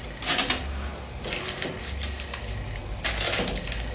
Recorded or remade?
recorded